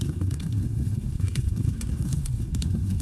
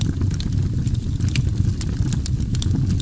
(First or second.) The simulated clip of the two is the first